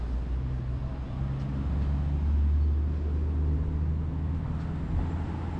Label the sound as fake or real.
real